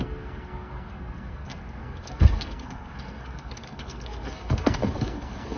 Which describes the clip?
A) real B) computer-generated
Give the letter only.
B